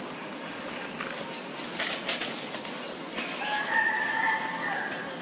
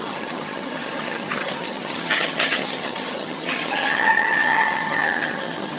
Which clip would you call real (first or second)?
first